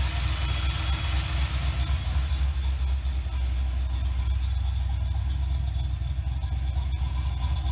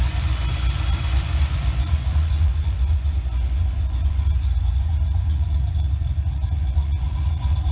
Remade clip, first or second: second